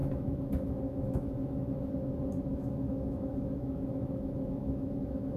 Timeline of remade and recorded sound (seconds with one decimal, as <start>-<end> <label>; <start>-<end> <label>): 0.0-1.9 remade; 1.9-2.5 recorded; 2.5-5.4 remade